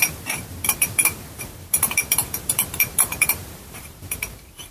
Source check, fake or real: fake